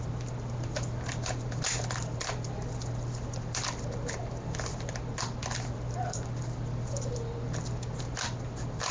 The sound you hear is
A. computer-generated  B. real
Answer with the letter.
B